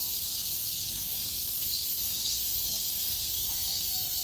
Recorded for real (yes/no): no